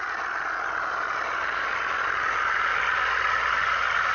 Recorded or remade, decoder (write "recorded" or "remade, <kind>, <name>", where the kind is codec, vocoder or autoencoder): recorded